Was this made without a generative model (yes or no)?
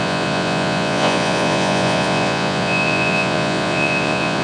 no